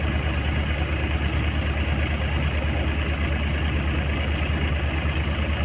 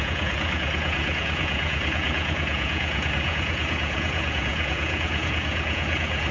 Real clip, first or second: first